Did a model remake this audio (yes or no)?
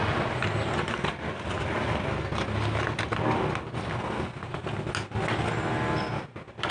no